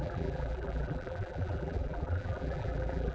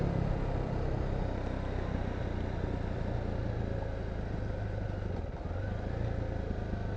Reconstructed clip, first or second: first